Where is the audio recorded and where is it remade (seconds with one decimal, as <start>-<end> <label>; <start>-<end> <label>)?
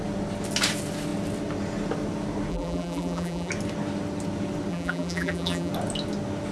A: 0.0-2.5 recorded; 2.5-3.5 remade; 3.5-4.7 recorded; 4.7-5.7 remade; 5.7-6.5 recorded